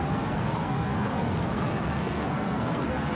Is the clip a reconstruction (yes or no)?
yes